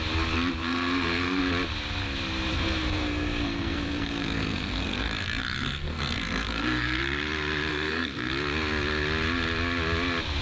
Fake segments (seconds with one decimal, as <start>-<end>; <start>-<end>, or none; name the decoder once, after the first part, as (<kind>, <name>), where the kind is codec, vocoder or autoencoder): 0.6-1.4 (codec, SNAC); 2.5-7.0; 7.7-8.3